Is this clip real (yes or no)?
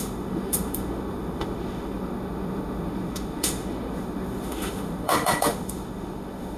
no